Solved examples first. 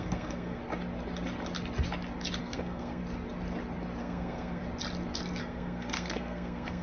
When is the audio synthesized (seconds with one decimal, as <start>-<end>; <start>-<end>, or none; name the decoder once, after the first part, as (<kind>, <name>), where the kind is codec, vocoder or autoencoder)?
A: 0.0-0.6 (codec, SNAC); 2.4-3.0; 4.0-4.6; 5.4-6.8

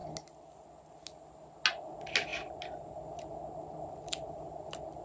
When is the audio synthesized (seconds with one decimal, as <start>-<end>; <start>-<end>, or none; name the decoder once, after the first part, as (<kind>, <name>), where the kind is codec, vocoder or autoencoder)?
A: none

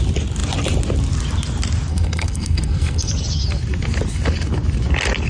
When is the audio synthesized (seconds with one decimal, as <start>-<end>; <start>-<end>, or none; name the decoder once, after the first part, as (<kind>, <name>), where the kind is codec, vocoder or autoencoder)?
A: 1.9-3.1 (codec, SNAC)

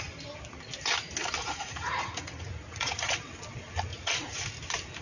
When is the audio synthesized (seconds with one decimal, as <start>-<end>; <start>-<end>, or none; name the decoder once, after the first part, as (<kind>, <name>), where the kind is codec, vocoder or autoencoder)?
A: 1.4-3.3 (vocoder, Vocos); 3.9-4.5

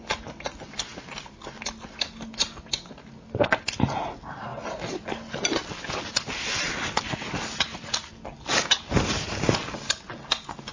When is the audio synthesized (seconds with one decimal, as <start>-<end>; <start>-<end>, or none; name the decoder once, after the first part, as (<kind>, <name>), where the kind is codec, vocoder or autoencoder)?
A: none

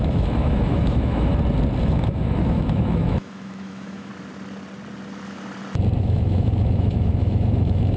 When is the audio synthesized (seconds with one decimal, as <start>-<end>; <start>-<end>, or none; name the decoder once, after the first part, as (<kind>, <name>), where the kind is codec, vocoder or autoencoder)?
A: 0.0-1.3 (autoencoder, DAC-VAE); 1.8-4.1; 6.0-8.0

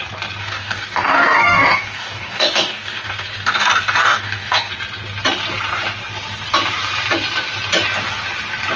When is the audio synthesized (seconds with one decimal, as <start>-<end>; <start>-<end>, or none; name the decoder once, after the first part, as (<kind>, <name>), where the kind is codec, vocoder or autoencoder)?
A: 0.4-4.7 (codec, DAC)

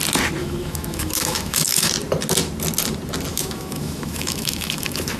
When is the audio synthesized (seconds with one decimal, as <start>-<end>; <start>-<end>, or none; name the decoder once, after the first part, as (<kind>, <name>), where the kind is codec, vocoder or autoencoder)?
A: 0.4-1.9 (autoencoder, DAC-VAE); 3.3-5.2